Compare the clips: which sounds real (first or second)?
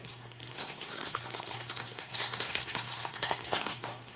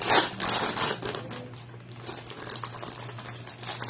second